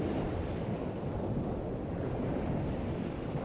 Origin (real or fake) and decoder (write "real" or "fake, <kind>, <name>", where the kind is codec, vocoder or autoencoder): real